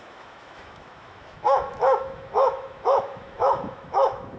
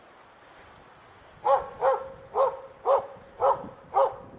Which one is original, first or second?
second